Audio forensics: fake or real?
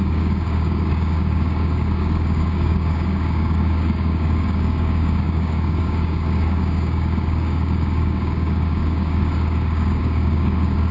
fake